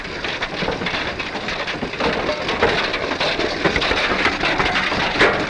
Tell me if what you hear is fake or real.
real